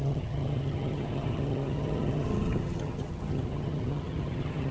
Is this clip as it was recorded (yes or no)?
no